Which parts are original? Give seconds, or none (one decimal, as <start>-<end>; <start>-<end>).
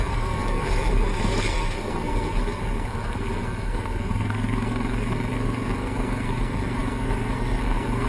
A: none